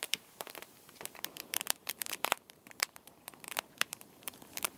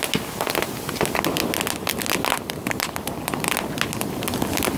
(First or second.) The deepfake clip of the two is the first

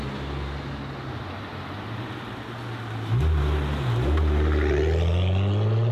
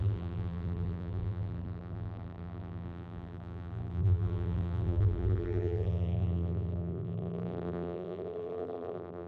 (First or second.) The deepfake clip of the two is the second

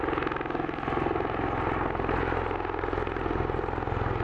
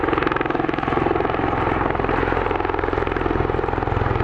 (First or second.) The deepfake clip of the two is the second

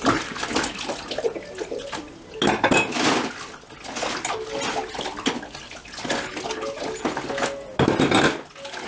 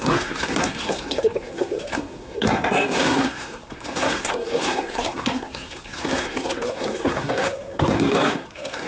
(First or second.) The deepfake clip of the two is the second